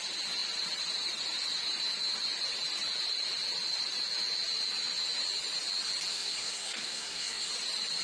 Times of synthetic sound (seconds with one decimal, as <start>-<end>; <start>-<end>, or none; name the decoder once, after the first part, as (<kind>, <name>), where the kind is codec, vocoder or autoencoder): 6.1-7.5 (codec, SNAC)